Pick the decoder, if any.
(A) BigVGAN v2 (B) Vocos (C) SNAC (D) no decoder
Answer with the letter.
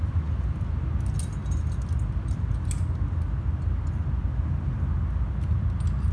D